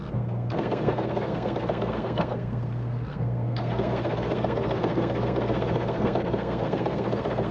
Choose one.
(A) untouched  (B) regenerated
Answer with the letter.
B